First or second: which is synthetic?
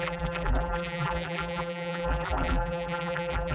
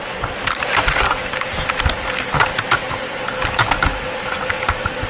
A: first